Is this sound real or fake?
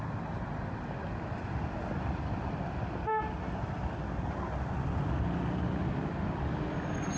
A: real